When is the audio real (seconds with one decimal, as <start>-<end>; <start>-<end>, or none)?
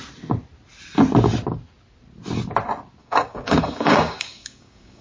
0.0-3.0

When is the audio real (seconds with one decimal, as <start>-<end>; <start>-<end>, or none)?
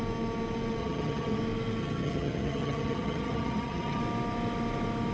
0.0-0.8; 1.4-1.8; 4.0-5.1